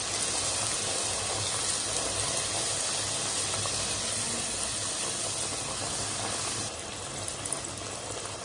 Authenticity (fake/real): real